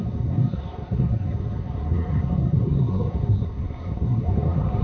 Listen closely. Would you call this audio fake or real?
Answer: fake